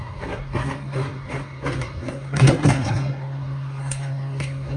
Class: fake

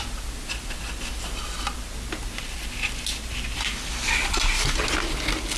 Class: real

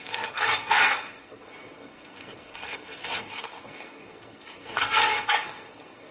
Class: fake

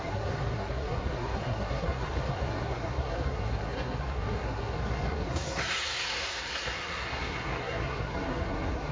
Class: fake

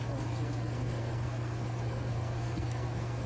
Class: fake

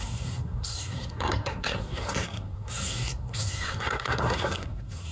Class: fake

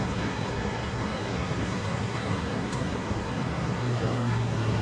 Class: fake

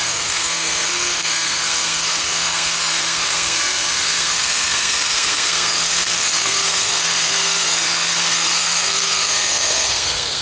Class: fake